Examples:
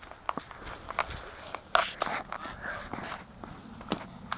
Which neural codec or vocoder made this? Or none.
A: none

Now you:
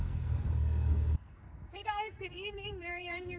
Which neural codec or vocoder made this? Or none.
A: codec, SNAC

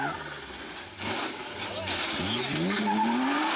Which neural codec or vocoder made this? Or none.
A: none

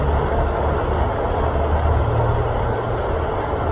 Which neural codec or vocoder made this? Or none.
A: none